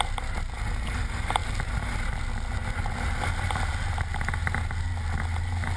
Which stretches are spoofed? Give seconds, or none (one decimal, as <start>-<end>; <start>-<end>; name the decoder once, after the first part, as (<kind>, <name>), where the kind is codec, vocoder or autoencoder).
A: none